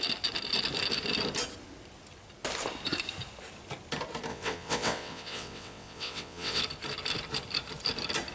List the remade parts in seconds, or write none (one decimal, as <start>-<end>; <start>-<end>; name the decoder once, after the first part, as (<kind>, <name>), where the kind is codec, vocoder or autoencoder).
4.3-6.6 (vocoder, WaveNeXt)